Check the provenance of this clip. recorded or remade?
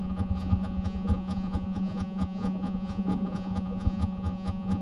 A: remade